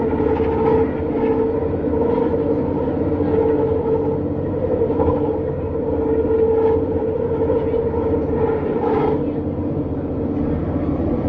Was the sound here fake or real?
real